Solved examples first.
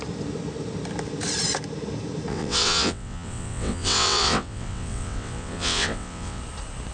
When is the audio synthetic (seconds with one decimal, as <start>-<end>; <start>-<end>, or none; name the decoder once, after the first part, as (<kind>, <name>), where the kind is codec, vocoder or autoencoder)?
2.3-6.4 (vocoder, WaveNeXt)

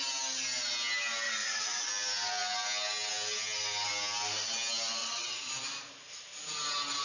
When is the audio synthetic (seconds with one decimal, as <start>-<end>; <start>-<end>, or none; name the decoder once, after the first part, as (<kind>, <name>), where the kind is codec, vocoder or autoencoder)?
1.4-1.9 (vocoder, WaveNeXt); 5.0-5.5

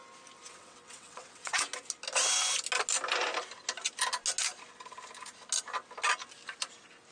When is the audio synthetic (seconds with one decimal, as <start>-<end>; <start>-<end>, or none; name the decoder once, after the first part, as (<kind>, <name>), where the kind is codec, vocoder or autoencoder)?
0.5-1.6 (vocoder, WaveNeXt)

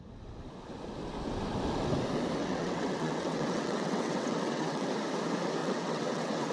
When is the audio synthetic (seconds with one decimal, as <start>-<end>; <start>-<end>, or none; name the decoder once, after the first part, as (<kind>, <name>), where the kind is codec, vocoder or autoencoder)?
2.4-4.9 (vocoder, WaveNeXt); 5.6-6.5

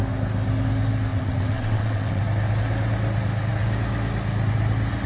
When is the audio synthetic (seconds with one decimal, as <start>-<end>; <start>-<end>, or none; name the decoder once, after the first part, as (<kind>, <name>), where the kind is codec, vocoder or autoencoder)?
1.1-2.2 (vocoder, WaveNeXt)